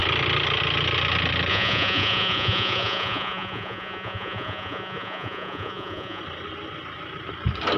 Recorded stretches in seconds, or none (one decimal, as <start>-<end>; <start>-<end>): 0.0-1.5; 6.2-7.8